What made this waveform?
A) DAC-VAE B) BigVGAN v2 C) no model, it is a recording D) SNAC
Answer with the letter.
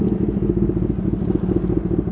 C